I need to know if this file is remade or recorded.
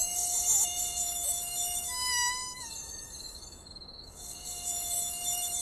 remade